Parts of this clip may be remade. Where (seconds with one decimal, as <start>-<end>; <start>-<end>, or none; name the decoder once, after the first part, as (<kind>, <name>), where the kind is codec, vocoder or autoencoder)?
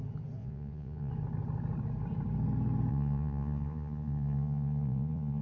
0.4-1.1 (vocoder, Vocos); 2.9-5.4